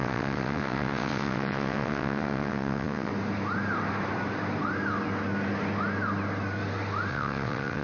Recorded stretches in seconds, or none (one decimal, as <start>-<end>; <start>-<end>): 3.1-7.1